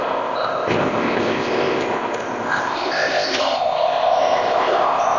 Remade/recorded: remade